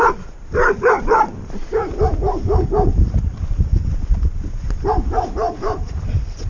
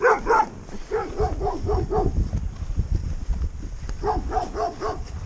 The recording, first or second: second